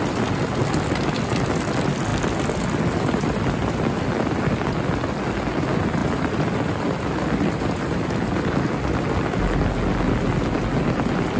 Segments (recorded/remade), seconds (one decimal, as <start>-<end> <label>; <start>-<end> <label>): 0.0-2.1 recorded; 2.1-4.1 remade; 4.1-6.0 recorded; 6.0-8.5 remade; 8.5-11.4 recorded